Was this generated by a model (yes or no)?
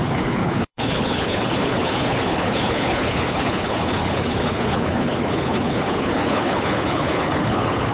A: yes